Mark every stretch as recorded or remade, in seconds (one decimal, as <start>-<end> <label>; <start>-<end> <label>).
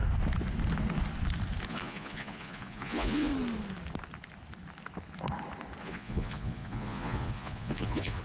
0.0-1.7 recorded; 1.7-3.3 remade; 3.3-5.8 recorded; 5.8-8.2 remade